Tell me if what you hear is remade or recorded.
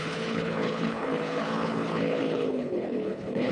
remade